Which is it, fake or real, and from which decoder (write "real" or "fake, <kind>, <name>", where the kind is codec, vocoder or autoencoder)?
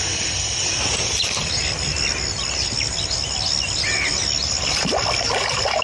real